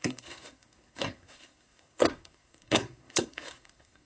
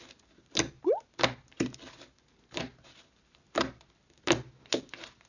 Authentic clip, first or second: second